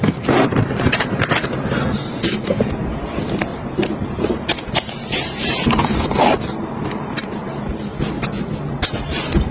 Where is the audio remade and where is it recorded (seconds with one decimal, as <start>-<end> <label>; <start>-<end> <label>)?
0.0-7.9 remade; 7.9-8.7 recorded; 8.7-9.5 remade